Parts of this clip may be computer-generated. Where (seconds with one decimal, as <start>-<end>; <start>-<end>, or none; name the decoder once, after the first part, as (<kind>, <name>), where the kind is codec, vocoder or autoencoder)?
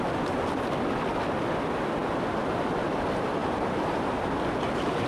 none